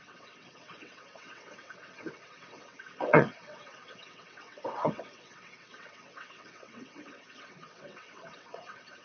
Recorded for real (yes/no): no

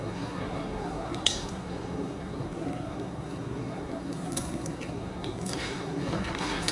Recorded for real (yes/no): no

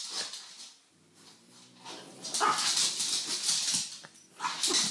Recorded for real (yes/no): yes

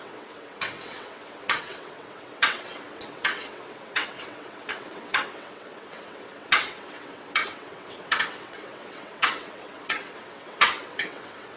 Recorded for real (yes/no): no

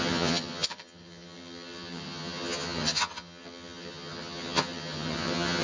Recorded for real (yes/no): no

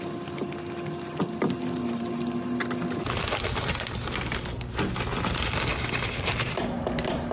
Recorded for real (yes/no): yes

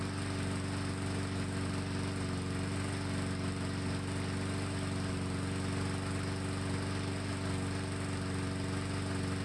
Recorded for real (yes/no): yes